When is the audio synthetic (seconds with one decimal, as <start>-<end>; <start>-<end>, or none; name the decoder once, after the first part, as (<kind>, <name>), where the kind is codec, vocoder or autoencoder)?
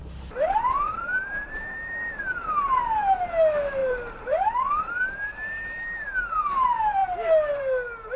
0.0-2.2 (vocoder, BigVGAN v2); 3.8-4.9